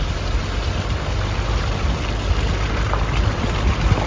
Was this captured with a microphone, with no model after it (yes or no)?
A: yes